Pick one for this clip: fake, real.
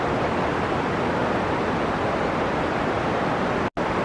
real